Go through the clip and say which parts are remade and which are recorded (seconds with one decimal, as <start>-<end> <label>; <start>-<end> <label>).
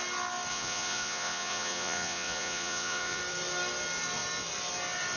0.0-0.5 recorded; 0.5-3.2 remade; 3.2-5.2 recorded